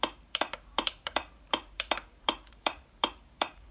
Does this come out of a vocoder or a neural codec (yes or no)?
yes